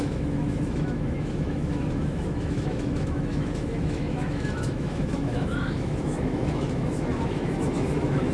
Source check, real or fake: fake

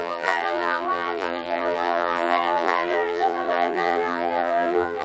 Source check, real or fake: fake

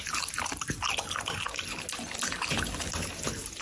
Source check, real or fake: real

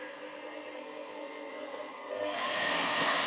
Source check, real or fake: fake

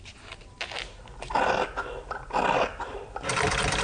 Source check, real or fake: real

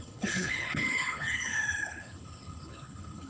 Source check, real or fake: fake